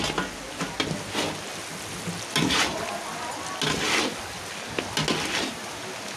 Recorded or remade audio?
recorded